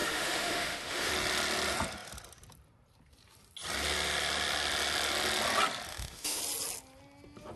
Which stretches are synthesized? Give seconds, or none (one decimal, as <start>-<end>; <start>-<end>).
0.0-1.1; 5.9-6.4

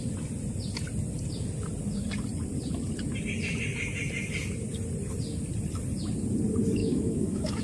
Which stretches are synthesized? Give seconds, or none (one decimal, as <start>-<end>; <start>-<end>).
6.8-7.6

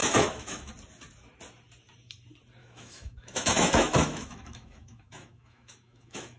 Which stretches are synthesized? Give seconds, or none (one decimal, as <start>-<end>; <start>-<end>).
0.0-0.7; 2.6-6.4

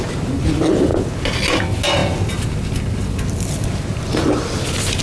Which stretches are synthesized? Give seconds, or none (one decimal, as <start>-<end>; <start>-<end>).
none